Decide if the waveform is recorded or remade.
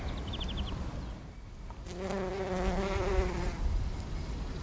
recorded